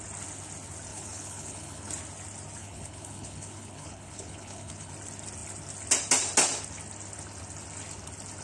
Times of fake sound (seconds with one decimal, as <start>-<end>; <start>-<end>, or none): 0.9-1.9; 2.6-4.9